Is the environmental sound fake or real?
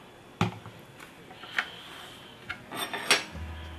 real